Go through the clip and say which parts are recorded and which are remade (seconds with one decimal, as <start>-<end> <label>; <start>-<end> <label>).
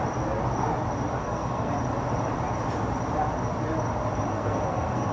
0.0-1.2 recorded; 1.2-1.7 remade; 1.7-4.3 recorded; 4.3-5.1 remade